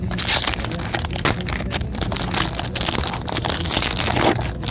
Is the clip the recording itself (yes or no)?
yes